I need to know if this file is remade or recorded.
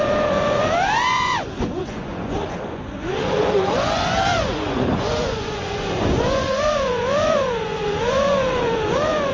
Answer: remade